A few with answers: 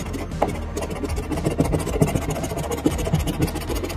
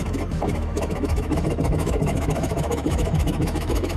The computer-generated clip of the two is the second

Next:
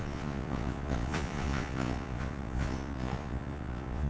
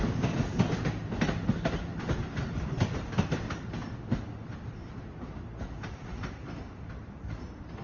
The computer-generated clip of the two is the first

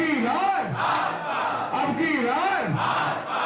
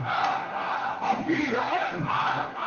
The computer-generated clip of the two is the second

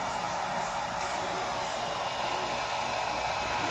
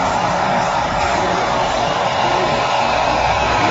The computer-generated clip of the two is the second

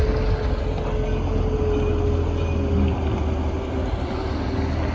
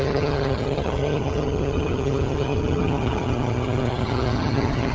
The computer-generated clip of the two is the second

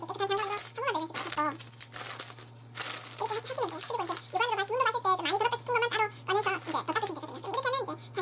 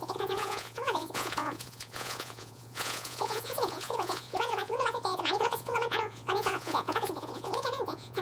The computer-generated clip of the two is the second